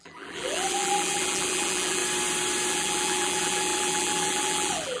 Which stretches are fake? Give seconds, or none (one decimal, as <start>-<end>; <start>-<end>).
0.0-2.0; 2.7-5.0